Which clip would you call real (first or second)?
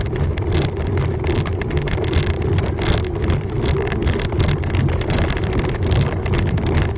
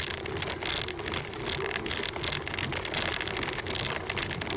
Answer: second